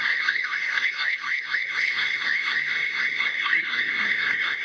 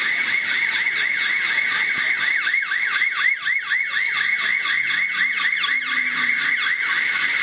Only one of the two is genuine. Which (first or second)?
second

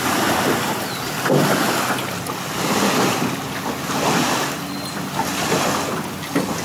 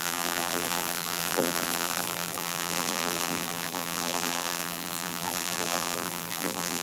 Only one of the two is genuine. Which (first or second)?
first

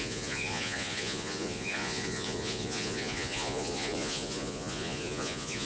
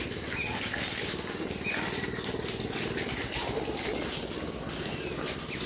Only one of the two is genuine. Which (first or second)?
second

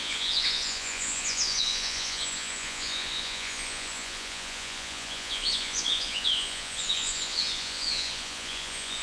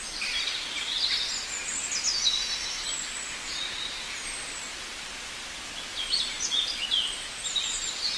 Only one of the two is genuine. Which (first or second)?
second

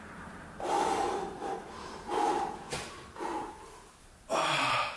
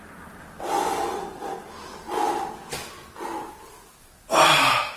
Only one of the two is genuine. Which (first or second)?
second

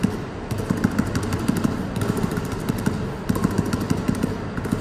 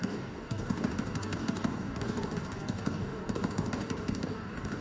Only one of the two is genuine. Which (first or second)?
first